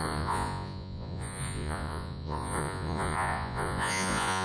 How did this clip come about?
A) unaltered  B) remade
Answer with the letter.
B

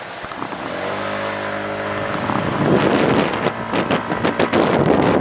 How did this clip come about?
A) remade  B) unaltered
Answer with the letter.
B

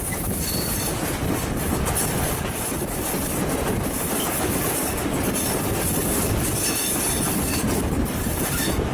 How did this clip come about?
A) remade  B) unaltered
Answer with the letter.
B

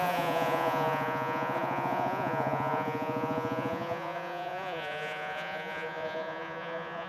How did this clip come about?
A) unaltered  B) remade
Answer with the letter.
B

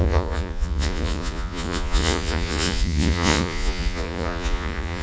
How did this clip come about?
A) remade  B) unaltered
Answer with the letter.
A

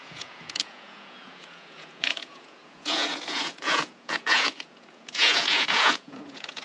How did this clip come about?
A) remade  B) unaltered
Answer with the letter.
A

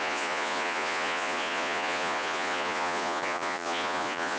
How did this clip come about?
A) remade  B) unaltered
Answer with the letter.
A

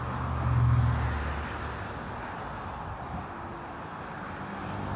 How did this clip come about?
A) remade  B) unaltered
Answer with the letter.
B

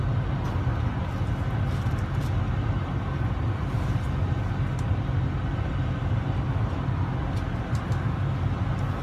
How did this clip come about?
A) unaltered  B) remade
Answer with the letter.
A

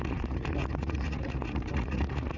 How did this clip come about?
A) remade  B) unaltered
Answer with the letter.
A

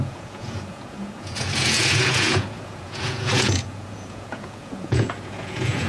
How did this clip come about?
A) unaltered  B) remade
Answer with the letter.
B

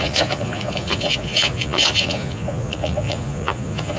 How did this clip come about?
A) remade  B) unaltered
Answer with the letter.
A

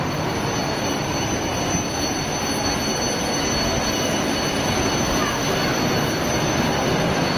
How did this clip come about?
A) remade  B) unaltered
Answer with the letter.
B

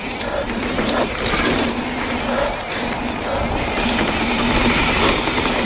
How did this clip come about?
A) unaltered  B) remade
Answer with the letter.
A